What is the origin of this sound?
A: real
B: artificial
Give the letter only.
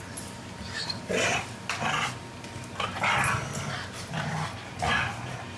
A